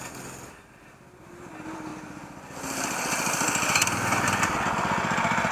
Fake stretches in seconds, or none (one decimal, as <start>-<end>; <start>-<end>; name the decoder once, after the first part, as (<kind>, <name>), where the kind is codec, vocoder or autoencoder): none